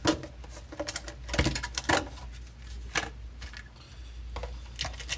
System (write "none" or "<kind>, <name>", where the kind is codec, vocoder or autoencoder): none